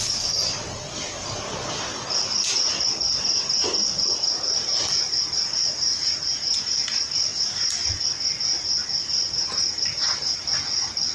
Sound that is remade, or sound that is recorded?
recorded